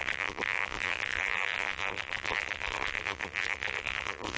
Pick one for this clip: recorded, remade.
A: remade